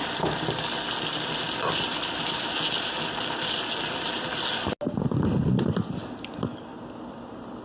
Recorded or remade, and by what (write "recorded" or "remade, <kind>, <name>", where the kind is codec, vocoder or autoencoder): recorded